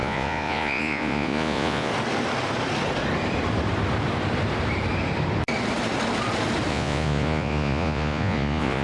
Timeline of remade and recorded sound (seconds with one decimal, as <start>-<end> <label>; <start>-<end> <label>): 0.0-1.9 remade; 1.9-6.7 recorded; 6.7-8.8 remade